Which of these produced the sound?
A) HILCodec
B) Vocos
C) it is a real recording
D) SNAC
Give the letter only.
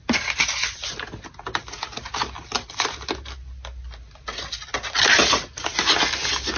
C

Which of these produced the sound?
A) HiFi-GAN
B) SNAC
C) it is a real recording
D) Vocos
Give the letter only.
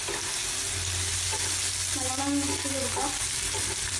C